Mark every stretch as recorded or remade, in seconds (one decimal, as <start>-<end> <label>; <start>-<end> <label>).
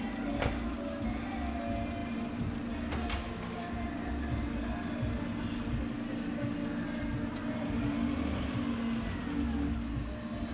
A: 0.0-10.5 recorded